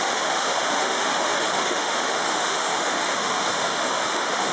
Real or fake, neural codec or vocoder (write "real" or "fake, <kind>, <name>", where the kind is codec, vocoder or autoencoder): fake, autoencoder, DAC-VAE